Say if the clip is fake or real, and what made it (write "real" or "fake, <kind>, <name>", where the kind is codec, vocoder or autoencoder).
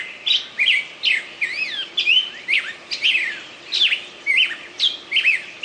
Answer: real